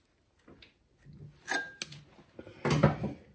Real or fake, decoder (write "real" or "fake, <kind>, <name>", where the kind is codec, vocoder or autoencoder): real